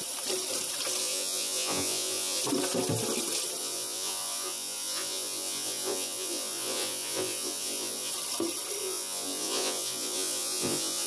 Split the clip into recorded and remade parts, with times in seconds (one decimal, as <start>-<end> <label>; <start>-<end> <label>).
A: 0.0-1.0 recorded; 1.0-2.4 remade; 2.4-3.6 recorded; 3.6-8.1 remade; 8.1-8.8 recorded; 8.8-11.1 remade